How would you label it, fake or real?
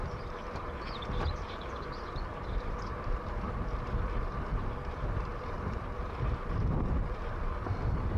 fake